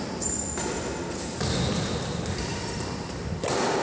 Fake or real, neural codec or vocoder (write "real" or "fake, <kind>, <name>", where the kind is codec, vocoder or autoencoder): real